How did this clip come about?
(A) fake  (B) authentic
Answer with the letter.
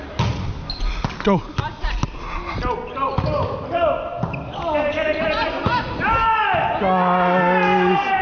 B